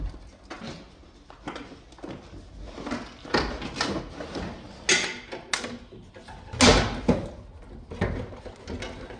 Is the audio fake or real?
real